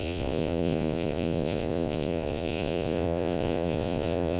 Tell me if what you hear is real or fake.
fake